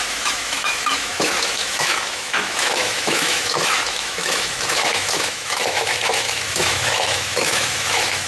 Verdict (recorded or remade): remade